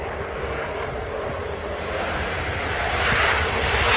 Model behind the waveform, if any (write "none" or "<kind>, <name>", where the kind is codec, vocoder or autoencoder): none